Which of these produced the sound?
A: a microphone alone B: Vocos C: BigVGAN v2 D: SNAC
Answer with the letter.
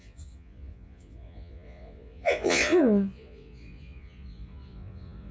B